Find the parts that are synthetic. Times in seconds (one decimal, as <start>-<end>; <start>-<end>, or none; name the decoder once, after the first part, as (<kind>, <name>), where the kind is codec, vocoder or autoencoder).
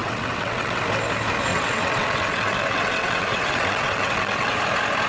0.0-0.8 (vocoder, WaveNeXt); 1.5-4.6